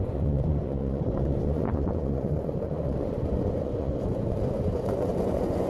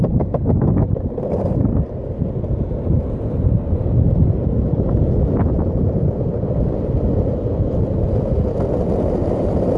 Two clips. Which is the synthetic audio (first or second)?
first